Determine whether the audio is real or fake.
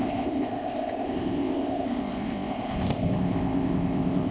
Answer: fake